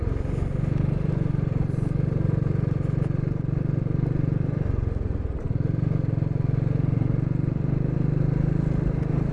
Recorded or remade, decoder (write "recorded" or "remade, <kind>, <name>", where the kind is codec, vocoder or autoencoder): recorded